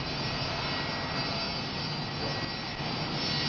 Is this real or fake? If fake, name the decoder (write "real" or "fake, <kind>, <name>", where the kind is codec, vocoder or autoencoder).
real